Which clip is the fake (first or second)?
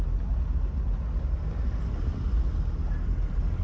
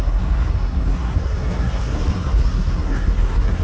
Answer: second